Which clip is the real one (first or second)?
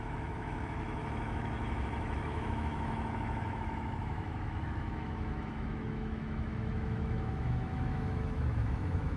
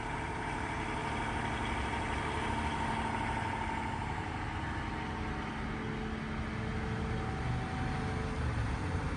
second